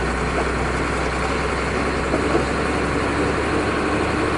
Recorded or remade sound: recorded